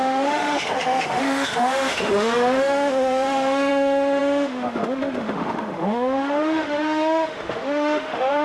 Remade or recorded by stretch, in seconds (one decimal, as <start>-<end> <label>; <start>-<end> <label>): 0.0-8.4 remade